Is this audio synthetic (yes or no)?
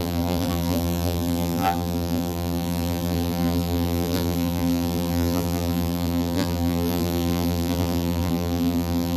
yes